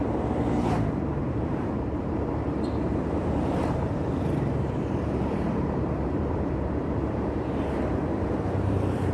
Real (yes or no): no